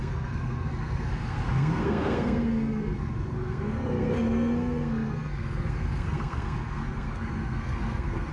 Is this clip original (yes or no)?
no